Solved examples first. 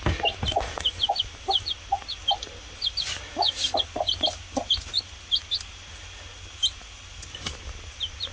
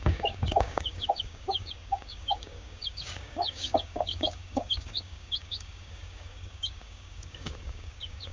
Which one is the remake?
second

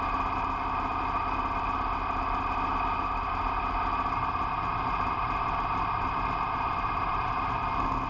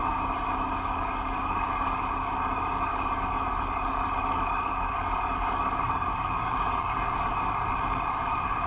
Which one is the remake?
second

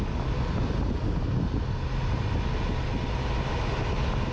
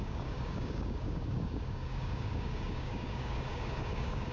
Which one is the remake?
second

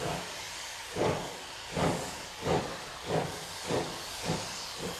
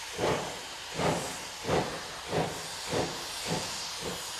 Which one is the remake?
first